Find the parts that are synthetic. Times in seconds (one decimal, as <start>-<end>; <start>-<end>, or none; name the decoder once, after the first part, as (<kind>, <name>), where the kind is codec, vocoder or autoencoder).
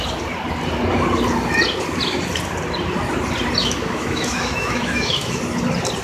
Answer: 3.6-5.4 (autoencoder, DAC-VAE)